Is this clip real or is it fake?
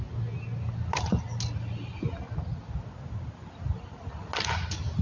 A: real